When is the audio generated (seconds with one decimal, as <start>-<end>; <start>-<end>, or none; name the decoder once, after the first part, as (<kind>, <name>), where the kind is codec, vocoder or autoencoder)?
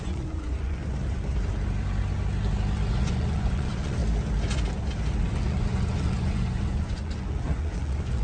0.0-0.8 (vocoder, Vocos); 2.9-4.0; 5.2-8.2